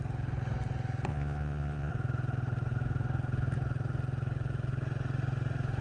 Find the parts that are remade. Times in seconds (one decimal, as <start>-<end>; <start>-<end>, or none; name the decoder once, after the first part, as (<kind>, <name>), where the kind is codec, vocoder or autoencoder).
1.1-1.9 (vocoder, Vocos)